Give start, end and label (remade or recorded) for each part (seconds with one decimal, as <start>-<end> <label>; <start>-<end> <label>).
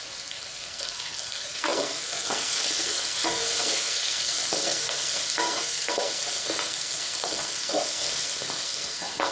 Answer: 0.0-9.3 remade